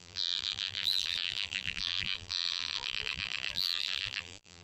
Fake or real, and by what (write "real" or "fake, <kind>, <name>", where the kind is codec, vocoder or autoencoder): fake, vocoder, BigVGAN v2